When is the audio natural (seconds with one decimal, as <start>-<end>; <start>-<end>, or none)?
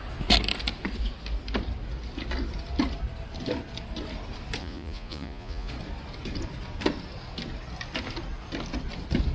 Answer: 0.0-4.6; 5.7-9.3